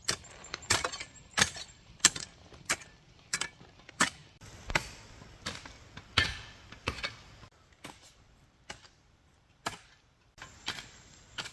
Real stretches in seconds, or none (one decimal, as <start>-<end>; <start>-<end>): 4.2-8.2; 9.6-10.9